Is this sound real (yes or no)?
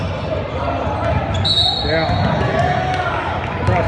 yes